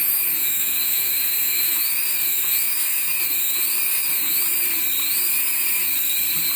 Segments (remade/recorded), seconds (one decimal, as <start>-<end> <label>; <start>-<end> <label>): 0.0-0.4 recorded; 0.4-4.4 remade; 4.4-6.6 recorded